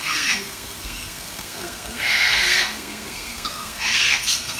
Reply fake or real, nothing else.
fake